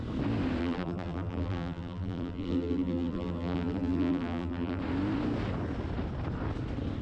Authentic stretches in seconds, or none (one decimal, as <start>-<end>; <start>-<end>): 0.0-0.6; 4.8-7.0